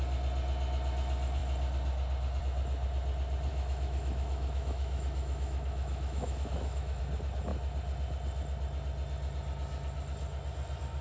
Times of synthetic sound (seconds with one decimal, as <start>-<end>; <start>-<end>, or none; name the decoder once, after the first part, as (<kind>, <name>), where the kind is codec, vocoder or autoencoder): 3.5-7.0 (autoencoder, DAC-VAE)